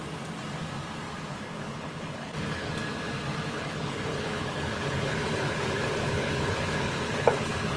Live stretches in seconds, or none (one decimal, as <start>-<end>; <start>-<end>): 0.0-1.3; 2.7-3.5